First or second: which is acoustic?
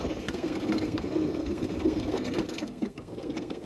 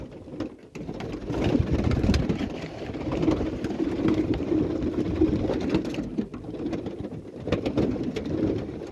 second